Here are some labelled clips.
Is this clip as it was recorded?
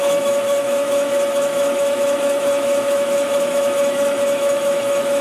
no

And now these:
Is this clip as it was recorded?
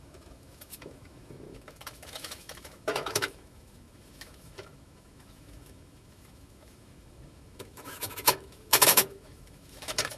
no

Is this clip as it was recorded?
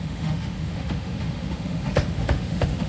no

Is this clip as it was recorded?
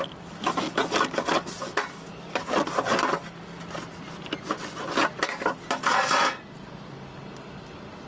yes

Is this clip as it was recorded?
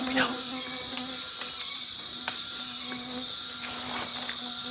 yes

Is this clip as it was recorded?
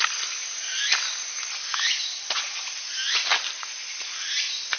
yes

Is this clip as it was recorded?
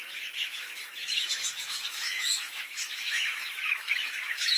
no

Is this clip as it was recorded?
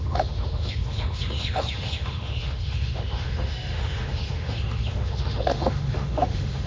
no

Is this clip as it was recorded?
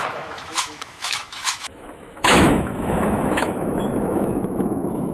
no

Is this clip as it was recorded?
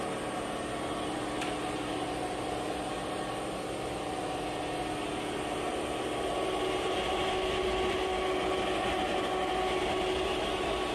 yes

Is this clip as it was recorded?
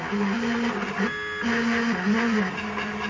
yes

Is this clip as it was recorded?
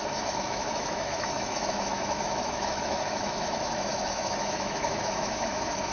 no